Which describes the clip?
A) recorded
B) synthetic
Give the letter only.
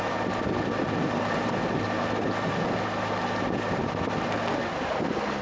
A